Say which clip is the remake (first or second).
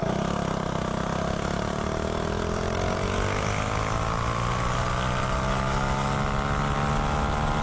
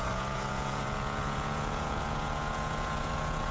second